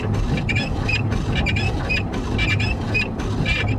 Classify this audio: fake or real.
real